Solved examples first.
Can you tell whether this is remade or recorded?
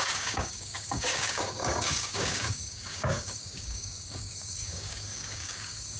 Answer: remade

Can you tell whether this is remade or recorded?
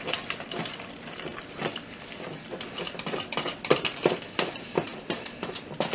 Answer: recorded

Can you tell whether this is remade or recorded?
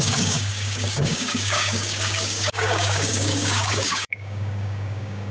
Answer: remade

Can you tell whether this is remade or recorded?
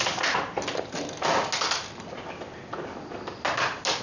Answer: recorded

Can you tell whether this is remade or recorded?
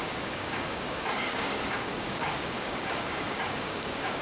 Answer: remade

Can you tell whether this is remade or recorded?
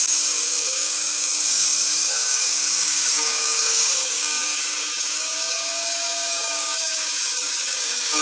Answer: remade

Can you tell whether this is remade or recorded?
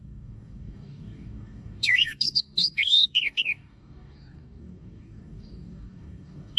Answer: remade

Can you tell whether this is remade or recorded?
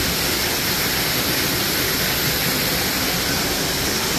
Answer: recorded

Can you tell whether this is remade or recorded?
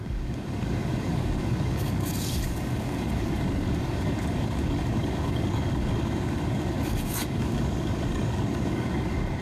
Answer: remade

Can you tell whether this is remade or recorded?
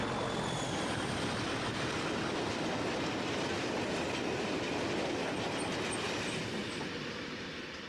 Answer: recorded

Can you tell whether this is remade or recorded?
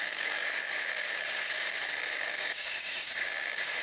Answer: remade